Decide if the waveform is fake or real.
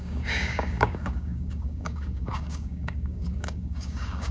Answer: fake